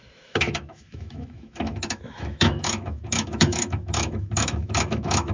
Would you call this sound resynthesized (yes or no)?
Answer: yes